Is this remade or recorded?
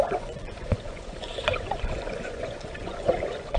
remade